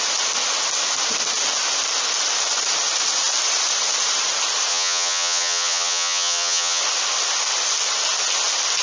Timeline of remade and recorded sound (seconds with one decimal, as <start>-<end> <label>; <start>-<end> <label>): 0.0-4.7 recorded; 4.7-6.8 remade; 6.8-8.8 recorded